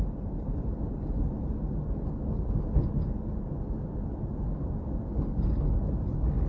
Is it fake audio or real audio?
real